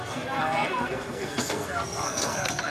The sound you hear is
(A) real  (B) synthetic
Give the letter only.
B